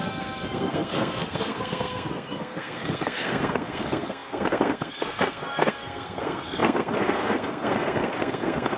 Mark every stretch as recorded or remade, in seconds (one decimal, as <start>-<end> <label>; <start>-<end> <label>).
0.0-8.8 remade